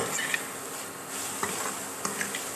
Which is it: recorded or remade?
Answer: recorded